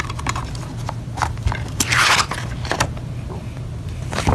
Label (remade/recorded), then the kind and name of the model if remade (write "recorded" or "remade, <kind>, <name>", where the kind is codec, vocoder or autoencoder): recorded